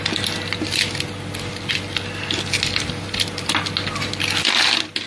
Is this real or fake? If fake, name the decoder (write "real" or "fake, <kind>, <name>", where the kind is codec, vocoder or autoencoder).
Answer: real